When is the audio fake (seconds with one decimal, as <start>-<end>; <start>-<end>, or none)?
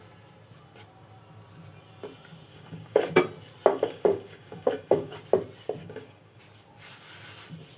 2.5-3.2; 3.7-5.2; 5.8-6.4